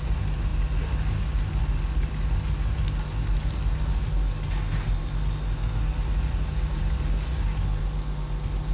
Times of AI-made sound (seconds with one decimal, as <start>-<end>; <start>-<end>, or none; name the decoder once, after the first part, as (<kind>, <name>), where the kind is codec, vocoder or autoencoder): none